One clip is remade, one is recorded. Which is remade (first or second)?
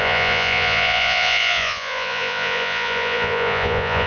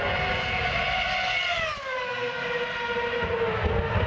first